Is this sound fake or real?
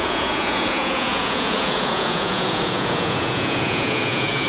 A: fake